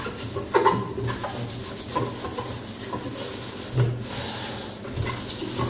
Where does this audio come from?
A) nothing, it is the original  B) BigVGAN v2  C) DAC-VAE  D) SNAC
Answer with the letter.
A